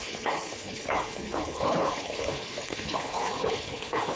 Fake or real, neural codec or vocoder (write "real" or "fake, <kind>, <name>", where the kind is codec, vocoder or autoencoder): fake, codec, HILCodec